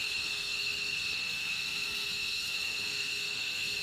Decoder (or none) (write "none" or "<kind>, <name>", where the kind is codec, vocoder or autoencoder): codec, SNAC